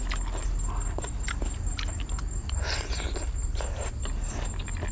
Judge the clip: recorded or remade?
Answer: recorded